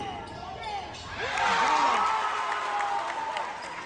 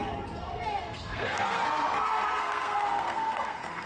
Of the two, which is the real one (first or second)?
first